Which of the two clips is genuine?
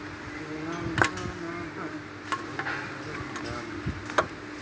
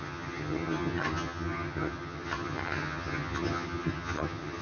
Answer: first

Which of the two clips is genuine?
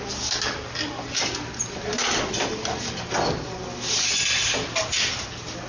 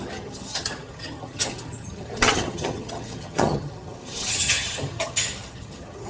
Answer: first